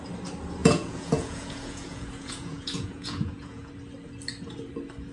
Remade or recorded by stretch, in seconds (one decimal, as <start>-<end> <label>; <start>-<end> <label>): 0.0-0.6 recorded; 0.6-3.7 remade; 3.7-5.1 recorded